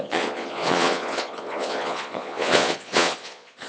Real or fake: fake